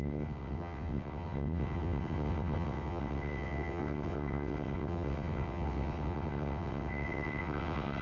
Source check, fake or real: fake